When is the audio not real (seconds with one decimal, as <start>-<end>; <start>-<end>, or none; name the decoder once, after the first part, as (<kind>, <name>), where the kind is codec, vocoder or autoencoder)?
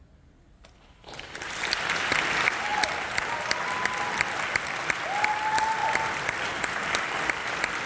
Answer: none